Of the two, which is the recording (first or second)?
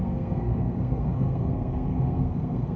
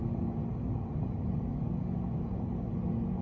second